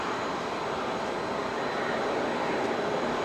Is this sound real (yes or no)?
yes